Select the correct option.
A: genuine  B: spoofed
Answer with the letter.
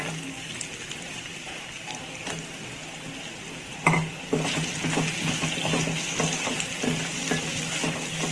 A